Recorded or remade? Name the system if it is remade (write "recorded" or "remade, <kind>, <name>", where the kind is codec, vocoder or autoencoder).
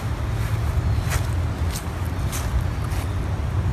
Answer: recorded